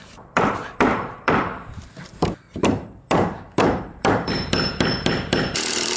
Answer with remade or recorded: remade